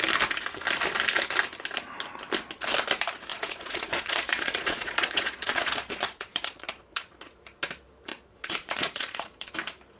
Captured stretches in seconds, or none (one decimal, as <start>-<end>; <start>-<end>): 0.0-3.3; 7.4-8.1; 9.5-10.0